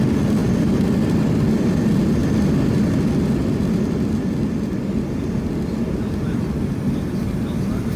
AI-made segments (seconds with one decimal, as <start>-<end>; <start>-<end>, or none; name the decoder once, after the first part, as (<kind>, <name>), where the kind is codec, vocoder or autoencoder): 0.4-1.3 (vocoder, BigVGAN v2); 2.2-2.8